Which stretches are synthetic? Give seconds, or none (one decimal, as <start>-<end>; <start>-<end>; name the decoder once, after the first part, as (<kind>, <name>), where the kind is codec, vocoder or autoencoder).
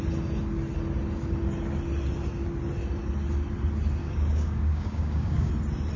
4.0-5.5 (codec, DAC)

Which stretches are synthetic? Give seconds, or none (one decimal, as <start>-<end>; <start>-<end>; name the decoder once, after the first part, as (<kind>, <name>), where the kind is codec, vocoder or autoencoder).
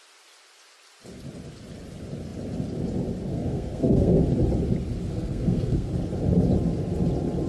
3.3-4.2 (codec, SNAC); 5.1-5.9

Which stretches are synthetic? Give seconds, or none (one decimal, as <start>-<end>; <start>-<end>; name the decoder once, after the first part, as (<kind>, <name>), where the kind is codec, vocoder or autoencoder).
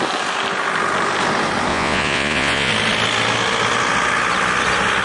1.7-2.7 (vocoder, Vocos)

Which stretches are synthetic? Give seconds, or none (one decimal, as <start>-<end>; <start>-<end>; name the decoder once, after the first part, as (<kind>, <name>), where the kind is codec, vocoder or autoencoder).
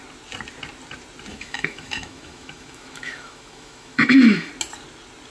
1.3-4.5 (autoencoder, DAC-VAE)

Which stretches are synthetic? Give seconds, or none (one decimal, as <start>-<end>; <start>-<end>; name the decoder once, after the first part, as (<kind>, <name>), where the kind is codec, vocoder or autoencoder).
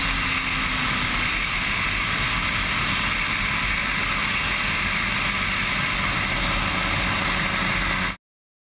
none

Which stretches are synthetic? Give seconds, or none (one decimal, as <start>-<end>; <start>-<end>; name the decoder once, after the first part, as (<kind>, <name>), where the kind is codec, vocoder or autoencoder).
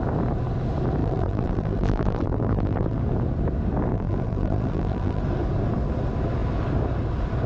1.0-3.0 (vocoder, BigVGAN v2); 3.9-5.2